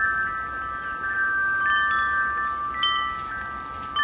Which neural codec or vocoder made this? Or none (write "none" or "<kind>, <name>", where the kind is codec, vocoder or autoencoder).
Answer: none